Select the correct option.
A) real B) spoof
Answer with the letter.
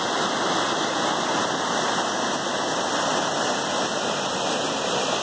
A